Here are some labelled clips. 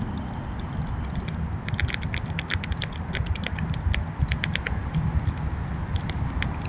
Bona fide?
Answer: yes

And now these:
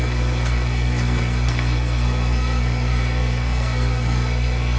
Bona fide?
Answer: no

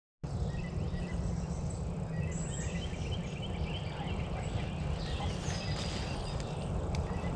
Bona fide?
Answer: yes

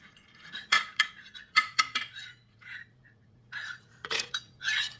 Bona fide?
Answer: no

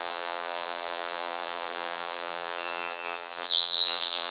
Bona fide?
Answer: no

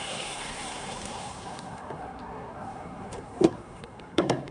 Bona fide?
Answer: no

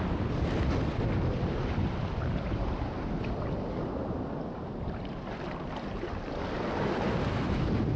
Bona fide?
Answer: yes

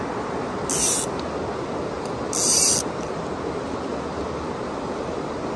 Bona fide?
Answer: yes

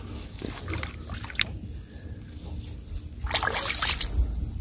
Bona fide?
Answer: yes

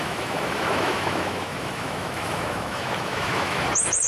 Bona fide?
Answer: no